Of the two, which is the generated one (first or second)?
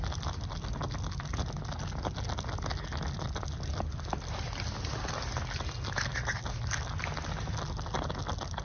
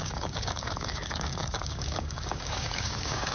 second